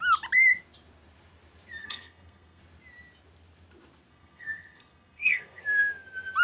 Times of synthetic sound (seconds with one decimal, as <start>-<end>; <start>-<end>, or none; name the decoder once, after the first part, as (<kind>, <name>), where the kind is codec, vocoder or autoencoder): 1.8-2.6 (codec, SNAC); 4.1-5.6